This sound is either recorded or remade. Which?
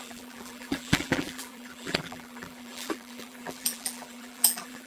remade